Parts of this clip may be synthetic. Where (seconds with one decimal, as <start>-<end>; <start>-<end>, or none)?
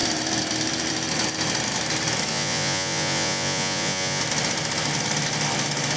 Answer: 2.3-4.2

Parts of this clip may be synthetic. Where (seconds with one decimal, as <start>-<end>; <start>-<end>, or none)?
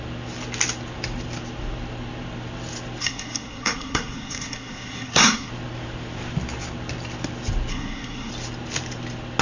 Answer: 3.0-5.5; 7.7-8.3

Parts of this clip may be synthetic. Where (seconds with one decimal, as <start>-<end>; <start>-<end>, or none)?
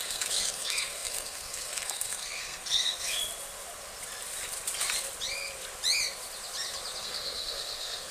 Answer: 0.0-3.2; 7.0-8.1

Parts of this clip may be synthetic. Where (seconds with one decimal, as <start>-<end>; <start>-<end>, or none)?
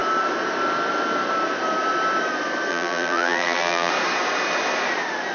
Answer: 2.7-3.9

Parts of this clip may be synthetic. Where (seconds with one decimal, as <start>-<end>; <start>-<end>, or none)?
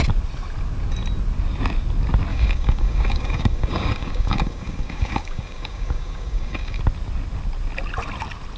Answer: 2.3-6.8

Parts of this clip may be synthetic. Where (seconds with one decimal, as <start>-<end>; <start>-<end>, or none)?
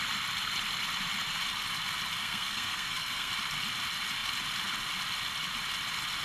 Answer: 2.2-3.3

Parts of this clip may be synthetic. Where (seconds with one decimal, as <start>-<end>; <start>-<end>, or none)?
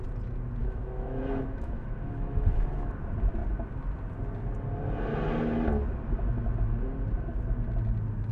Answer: 0.6-2.9